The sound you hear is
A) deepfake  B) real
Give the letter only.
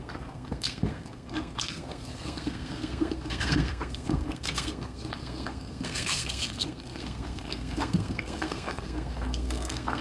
A